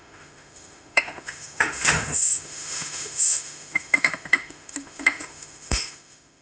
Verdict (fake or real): fake